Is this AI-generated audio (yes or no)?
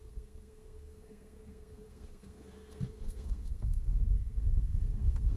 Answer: yes